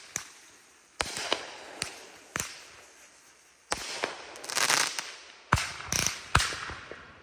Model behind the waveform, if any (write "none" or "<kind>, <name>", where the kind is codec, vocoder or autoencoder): none